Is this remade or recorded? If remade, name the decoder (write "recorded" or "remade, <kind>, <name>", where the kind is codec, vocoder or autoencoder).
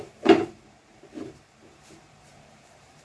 remade, vocoder, BigVGAN v2